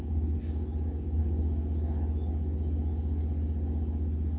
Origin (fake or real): real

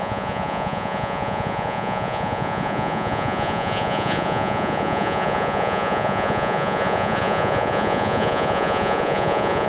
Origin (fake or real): fake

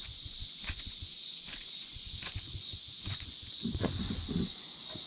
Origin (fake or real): fake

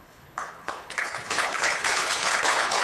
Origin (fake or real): fake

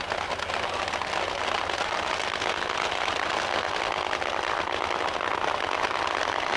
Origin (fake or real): real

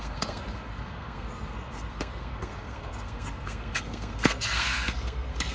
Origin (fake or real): fake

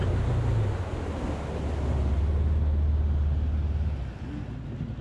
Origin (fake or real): real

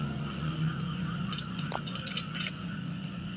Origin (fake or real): fake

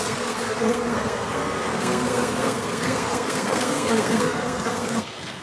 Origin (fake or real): fake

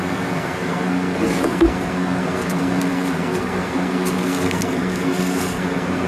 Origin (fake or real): fake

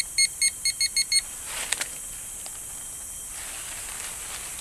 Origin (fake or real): real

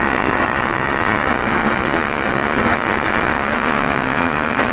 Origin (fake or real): fake